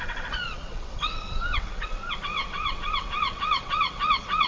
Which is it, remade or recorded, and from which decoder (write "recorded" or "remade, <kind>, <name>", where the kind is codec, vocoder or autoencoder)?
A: remade, vocoder, WaveNeXt